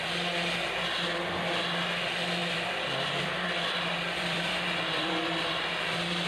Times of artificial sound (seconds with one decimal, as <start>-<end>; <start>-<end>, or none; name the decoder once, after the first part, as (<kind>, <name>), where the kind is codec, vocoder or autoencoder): 2.4-6.3 (vocoder, BigVGAN v2)